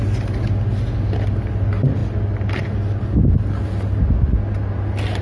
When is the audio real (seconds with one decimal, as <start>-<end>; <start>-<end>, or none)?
0.0-5.2